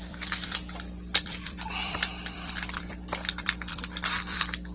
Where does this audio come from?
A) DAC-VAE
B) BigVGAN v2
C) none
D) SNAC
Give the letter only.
B